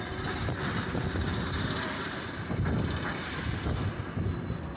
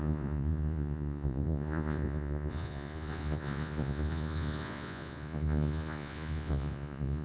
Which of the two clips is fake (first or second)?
second